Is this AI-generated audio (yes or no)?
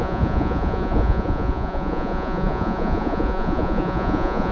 yes